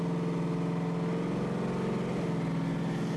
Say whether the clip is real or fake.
real